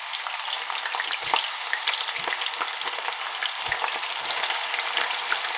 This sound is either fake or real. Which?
real